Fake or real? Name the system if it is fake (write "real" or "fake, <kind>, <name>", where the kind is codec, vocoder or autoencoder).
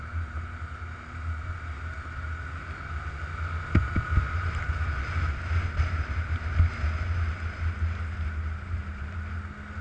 real